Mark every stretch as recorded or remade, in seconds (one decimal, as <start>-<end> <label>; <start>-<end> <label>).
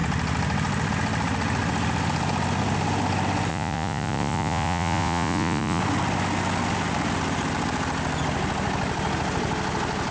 0.0-3.5 recorded; 3.5-5.8 remade; 5.8-10.1 recorded